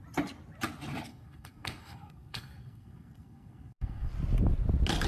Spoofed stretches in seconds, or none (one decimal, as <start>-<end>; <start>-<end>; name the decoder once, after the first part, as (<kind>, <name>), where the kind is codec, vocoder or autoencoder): 1.1-4.1 (codec, SNAC)